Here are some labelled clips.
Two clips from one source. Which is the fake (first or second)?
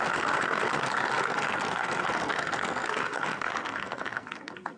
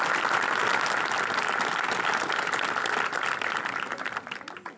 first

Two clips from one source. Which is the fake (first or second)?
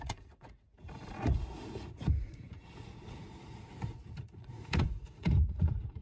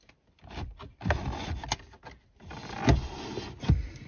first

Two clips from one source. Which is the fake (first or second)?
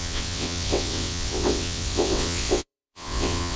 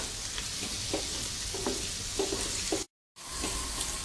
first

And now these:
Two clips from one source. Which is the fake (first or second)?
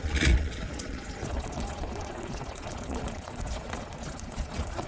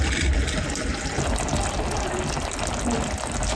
first